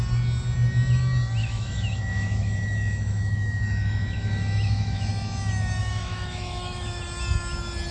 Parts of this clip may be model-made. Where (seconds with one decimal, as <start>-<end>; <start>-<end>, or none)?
1.4-5.1; 5.8-7.0